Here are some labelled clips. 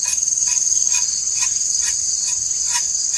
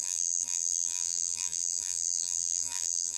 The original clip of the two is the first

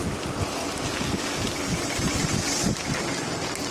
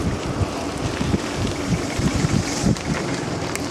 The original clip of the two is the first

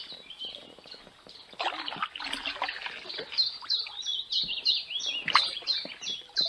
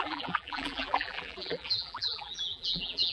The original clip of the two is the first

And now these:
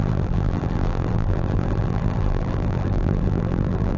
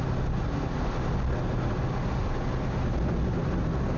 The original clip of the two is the second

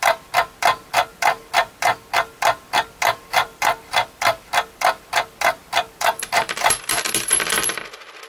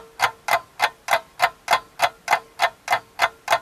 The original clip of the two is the second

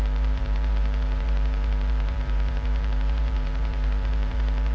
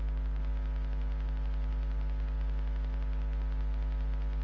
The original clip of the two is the second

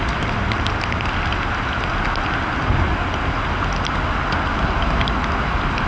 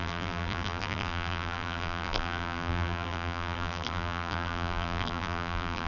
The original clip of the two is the first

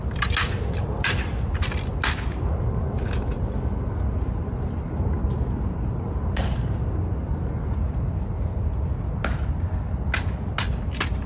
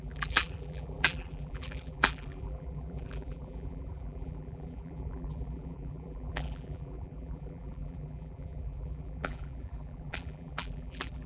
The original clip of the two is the first